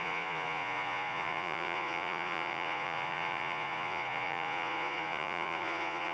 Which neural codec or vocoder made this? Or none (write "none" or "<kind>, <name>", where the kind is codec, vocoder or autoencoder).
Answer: vocoder, Vocos